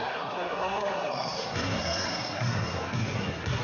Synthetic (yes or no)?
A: yes